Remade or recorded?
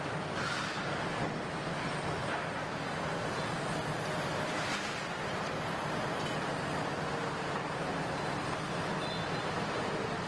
recorded